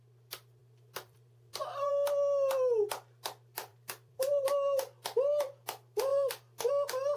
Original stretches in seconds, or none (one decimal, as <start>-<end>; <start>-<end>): 0.0-0.6; 1.9-3.7; 4.4-6.1; 6.7-7.2

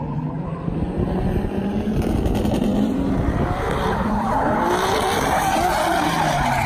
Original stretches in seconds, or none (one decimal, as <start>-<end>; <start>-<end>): 0.0-2.7; 5.4-6.7

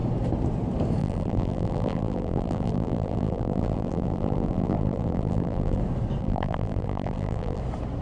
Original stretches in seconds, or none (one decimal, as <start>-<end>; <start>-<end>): 0.0-1.0; 5.8-6.2; 7.6-8.0

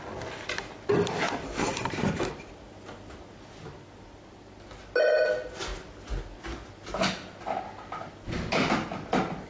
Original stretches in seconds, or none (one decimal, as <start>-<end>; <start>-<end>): 0.0-1.7; 2.6-9.5

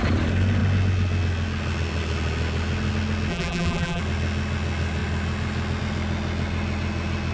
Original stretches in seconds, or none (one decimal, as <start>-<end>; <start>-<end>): 0.0-3.3; 4.0-7.3